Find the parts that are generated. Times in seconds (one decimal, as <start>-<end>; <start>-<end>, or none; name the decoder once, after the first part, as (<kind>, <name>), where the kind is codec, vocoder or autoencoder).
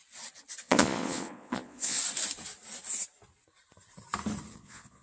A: 0.6-2.0 (vocoder, Vocos); 4.5-5.0